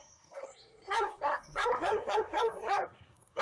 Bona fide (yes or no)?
no